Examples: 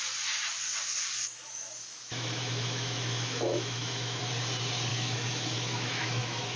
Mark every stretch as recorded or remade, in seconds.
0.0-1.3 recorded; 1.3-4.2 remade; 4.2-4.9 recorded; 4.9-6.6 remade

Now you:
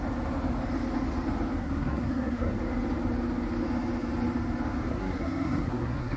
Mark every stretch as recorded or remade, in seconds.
0.0-1.6 recorded; 1.6-2.6 remade; 2.6-4.9 recorded; 4.9-6.2 remade

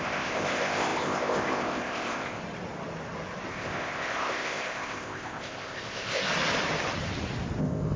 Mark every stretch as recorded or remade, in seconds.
0.0-2.4 remade; 2.4-3.5 recorded; 3.5-6.3 remade; 6.3-7.6 recorded; 7.6-8.0 remade

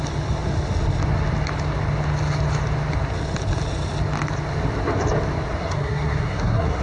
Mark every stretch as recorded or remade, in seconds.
0.0-5.6 recorded; 5.6-6.8 remade

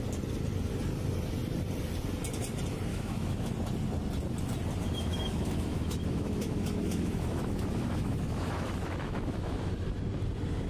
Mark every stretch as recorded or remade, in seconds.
0.0-2.9 recorded; 2.9-3.5 remade; 3.5-4.8 recorded; 4.8-9.7 remade; 9.7-10.7 recorded

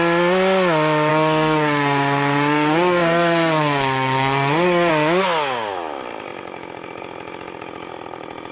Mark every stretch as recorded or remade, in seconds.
0.0-1.1 recorded; 1.1-4.9 remade; 4.9-8.5 recorded